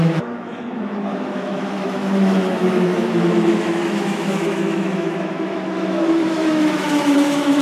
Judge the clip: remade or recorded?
remade